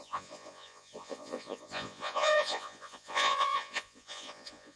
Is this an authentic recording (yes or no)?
no